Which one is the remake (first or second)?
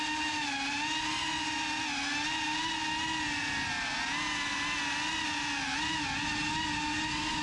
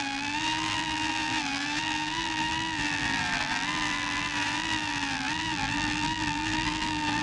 second